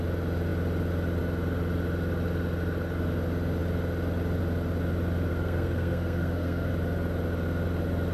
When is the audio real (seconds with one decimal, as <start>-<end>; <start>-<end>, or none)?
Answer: 0.0-5.3; 6.7-8.1